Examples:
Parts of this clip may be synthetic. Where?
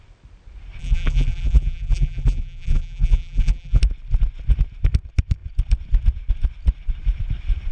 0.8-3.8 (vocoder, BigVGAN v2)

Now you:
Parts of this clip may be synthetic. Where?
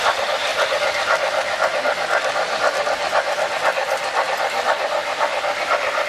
0.0-0.5 (vocoder, BigVGAN v2); 3.5-5.0; 5.6-6.1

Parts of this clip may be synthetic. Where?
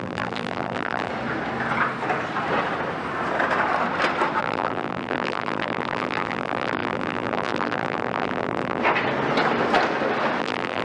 0.0-1.1 (vocoder, BigVGAN v2); 4.4-8.8; 10.4-10.8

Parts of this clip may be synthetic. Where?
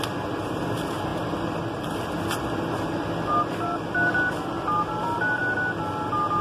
1.1-1.8 (vocoder, BigVGAN v2)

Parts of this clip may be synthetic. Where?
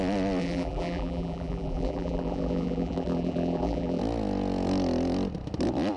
0.4-4.0 (vocoder, BigVGAN v2)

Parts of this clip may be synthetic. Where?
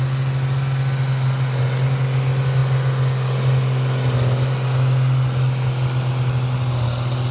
none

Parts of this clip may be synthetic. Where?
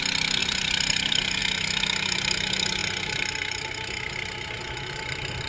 0.4-1.4 (vocoder, BigVGAN v2)